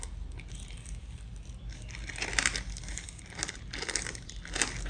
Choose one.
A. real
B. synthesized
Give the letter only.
A